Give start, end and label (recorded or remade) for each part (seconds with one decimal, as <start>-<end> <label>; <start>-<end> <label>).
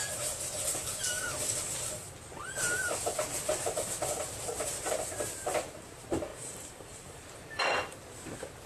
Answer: 0.0-6.3 recorded; 6.3-7.0 remade; 7.0-8.7 recorded